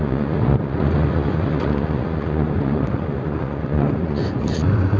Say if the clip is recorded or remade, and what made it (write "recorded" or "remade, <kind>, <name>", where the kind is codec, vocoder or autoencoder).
remade, vocoder, Vocos